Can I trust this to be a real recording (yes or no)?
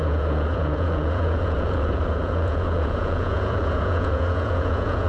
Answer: no